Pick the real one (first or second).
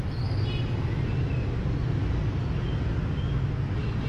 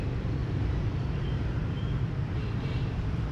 first